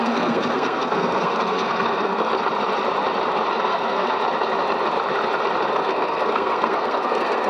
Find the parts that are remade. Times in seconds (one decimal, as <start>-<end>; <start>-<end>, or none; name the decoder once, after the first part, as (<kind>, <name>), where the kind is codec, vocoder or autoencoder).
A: 0.0-2.3 (codec, SNAC); 3.6-4.2; 5.7-7.5